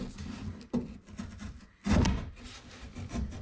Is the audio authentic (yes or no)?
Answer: yes